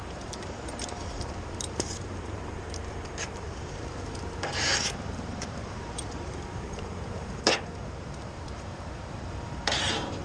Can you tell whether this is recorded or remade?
remade